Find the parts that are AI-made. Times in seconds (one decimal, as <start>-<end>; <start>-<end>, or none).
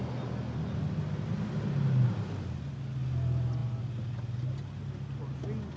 none